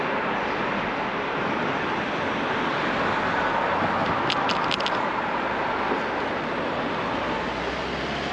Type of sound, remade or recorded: recorded